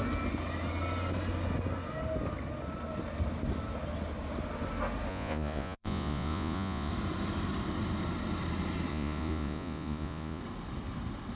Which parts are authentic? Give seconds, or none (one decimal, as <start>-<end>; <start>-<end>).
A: 0.0-5.1; 6.9-8.9; 10.4-11.4